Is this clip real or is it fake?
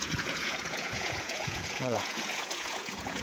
fake